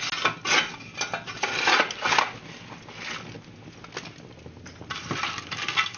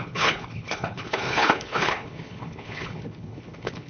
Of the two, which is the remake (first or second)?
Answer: second